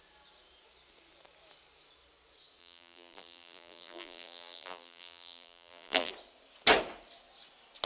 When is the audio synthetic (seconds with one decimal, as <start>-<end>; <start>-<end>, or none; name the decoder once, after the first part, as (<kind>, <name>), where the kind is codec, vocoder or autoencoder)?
2.6-6.1 (vocoder, BigVGAN v2)